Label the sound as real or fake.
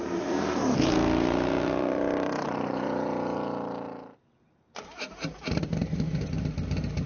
fake